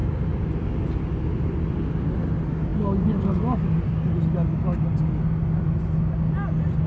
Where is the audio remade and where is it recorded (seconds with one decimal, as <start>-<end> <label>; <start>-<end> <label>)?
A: 0.0-6.9 recorded